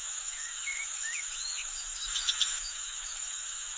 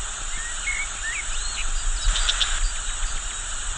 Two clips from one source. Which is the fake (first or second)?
first